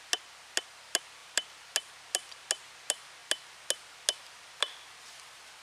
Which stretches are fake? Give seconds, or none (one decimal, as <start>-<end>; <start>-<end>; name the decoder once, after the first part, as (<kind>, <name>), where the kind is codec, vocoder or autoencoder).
none